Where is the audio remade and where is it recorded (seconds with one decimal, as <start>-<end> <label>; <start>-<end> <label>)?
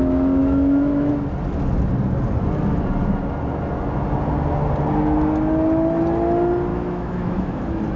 0.0-0.4 recorded; 0.4-1.1 remade; 1.1-6.7 recorded; 6.7-7.6 remade; 7.6-8.0 recorded